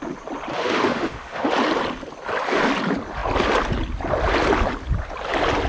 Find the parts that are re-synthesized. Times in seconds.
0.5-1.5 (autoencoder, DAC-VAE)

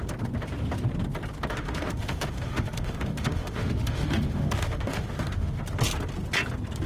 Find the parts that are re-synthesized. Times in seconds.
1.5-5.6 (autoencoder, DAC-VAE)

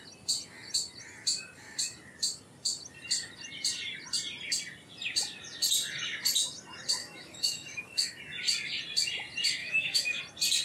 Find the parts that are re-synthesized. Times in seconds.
7.0-8.2 (autoencoder, DAC-VAE); 9.6-10.2

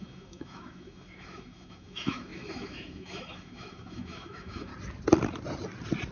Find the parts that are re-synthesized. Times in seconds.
0.0-4.7 (autoencoder, DAC-VAE)